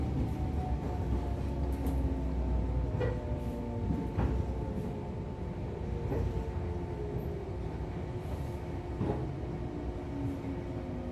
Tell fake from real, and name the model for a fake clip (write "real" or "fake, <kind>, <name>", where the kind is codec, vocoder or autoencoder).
real